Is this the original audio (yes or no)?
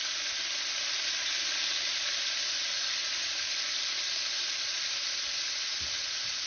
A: yes